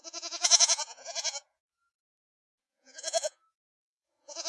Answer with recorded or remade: remade